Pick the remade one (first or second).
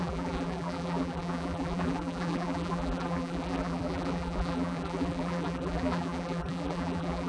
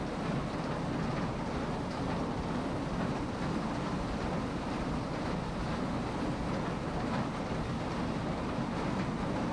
first